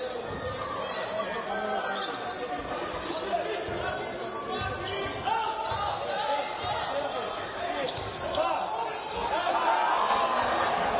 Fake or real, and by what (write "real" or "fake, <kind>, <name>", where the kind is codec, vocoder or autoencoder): real